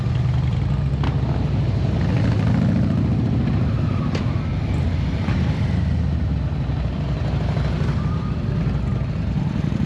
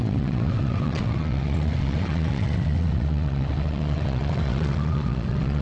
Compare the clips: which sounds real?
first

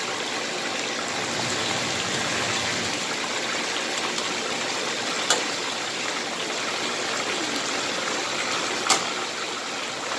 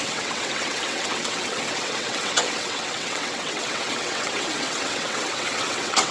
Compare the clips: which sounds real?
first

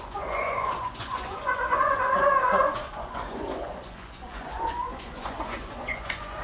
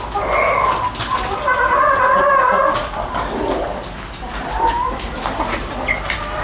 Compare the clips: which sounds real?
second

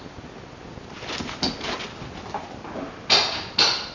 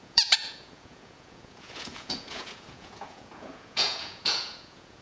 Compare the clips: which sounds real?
first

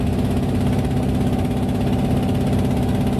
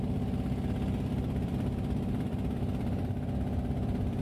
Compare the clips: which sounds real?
first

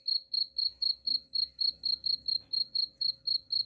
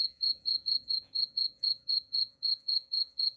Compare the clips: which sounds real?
first